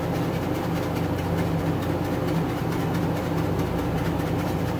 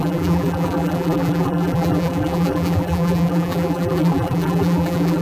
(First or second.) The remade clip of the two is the second